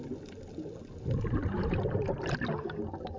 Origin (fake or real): real